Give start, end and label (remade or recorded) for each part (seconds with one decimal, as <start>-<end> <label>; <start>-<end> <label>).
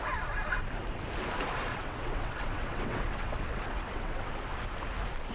0.0-1.7 recorded; 1.7-4.3 remade; 4.3-5.3 recorded